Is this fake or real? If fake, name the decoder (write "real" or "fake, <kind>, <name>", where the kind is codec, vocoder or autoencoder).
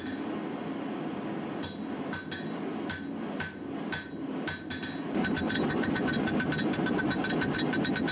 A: real